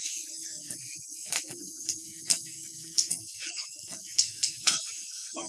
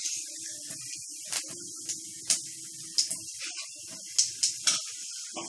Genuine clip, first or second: second